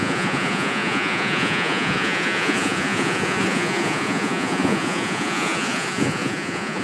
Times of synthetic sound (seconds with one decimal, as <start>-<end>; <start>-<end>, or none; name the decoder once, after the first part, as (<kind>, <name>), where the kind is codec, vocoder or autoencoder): 0.0-6.8 (vocoder, Vocos)